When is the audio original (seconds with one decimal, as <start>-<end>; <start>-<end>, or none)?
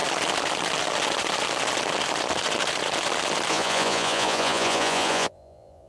0.0-3.5